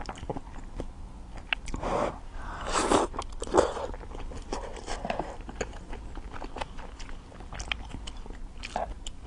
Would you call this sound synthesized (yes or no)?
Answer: no